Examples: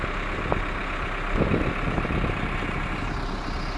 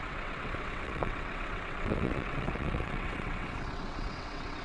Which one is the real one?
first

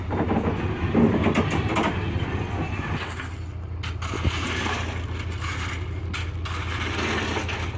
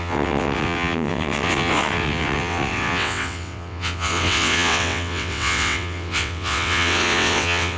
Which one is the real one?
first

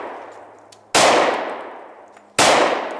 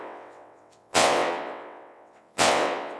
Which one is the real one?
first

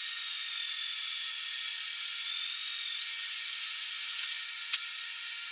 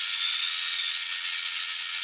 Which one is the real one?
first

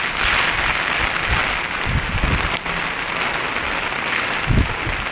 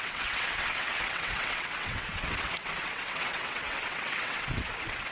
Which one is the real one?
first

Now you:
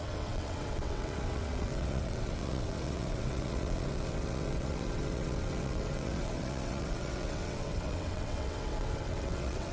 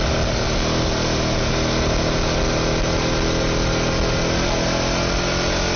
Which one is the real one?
second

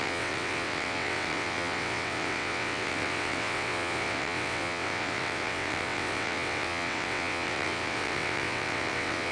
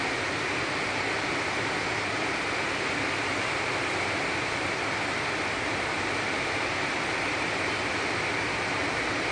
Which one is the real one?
second